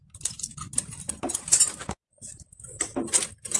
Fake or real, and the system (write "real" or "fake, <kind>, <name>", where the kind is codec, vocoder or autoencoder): real